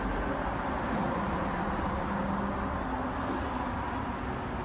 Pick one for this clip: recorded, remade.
recorded